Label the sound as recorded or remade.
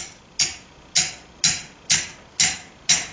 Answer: recorded